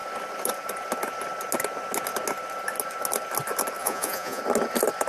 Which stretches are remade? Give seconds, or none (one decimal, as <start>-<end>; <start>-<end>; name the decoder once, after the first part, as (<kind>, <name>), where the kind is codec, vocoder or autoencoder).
3.8-4.4 (vocoder, Vocos)